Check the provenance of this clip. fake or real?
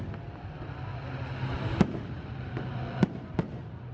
real